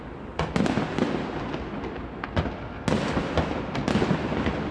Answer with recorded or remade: recorded